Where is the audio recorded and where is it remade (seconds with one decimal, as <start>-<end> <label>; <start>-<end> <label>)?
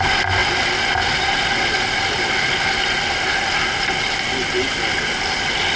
0.0-5.8 recorded